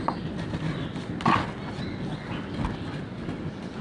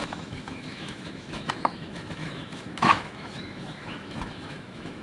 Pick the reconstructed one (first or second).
second